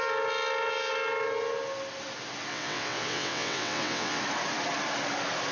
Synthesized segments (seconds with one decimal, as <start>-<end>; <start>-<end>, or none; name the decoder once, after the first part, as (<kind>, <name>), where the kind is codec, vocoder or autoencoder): 2.5-4.2 (vocoder, WaveNeXt)